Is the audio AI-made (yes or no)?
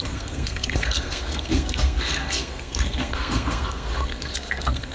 yes